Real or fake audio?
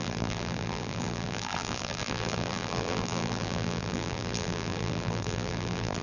fake